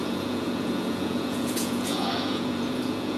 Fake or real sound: fake